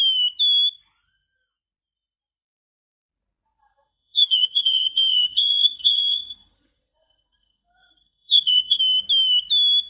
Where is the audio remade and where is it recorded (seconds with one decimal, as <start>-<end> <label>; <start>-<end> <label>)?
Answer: 0.0-3.6 recorded; 3.6-8.8 remade; 8.8-9.9 recorded